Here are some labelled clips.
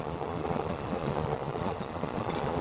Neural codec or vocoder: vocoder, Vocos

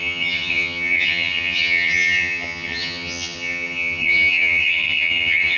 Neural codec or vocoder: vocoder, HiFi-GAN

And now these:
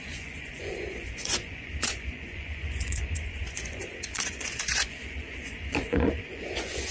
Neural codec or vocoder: vocoder, Vocos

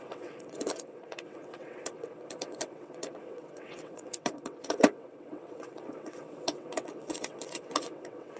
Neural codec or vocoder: vocoder, WaveNeXt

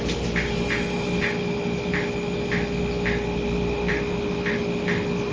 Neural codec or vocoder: none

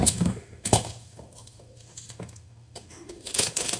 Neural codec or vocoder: autoencoder, DAC-VAE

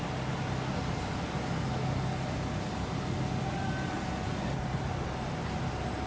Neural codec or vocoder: none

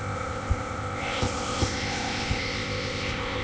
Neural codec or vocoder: codec, ZipCodec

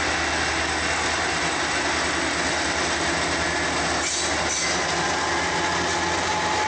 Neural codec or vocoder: none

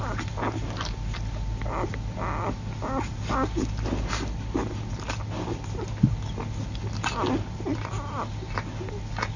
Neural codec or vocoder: none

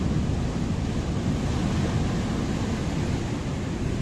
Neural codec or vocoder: none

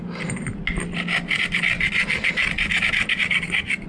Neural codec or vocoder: none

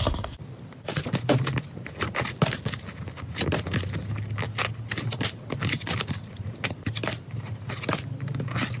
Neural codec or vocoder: none